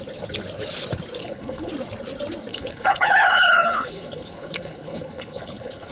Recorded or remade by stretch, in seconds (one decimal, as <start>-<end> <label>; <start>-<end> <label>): 0.0-1.2 recorded; 1.2-1.7 remade; 1.7-2.5 recorded; 2.5-5.9 remade